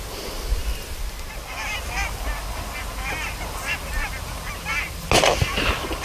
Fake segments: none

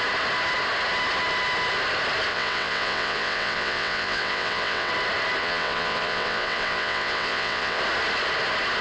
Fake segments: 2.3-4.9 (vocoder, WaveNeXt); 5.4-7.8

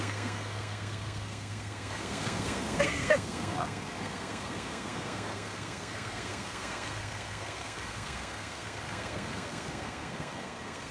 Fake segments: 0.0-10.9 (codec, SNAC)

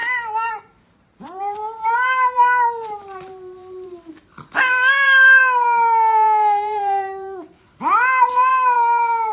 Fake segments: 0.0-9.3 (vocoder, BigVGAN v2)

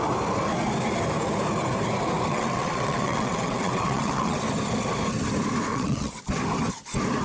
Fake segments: 2.3-4.4 (vocoder, WaveNeXt); 5.7-6.2

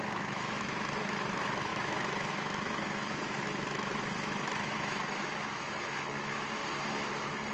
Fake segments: 0.0-6.6 (autoencoder, DAC-VAE)